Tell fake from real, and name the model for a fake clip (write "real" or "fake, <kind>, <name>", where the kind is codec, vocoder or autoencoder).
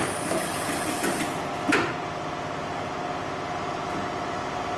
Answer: real